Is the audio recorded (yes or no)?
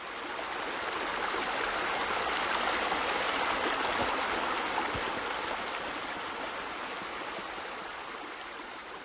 yes